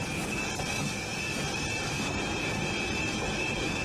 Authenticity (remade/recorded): recorded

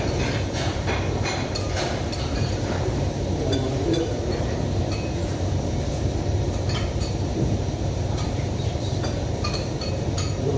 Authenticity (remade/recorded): remade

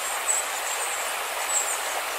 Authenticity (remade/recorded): recorded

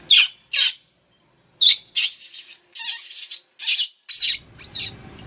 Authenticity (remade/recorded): recorded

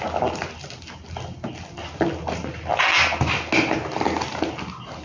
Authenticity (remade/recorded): recorded